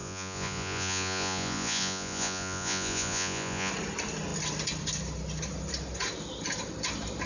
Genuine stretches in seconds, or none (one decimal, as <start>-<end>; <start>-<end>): 3.7-7.3